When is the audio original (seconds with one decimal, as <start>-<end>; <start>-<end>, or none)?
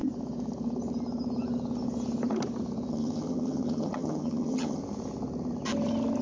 0.0-2.9; 4.8-6.2